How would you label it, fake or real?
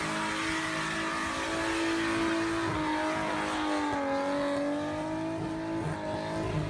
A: real